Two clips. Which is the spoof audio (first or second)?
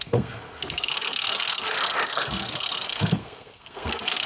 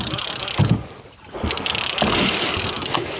first